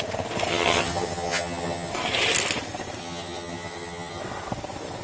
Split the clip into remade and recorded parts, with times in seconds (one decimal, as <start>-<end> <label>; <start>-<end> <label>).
0.0-0.5 recorded; 0.5-1.9 remade; 1.9-3.0 recorded; 3.0-4.2 remade; 4.2-5.0 recorded